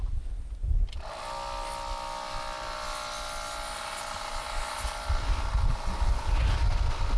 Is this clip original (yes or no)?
yes